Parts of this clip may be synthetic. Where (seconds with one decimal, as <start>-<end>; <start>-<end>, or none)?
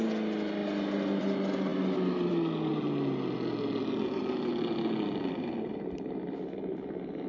none